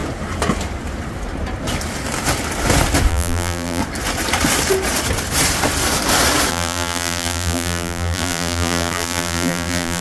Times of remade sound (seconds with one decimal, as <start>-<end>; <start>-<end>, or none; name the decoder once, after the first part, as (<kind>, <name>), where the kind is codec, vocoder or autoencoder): 3.1-3.8 (vocoder, BigVGAN v2); 6.5-10.0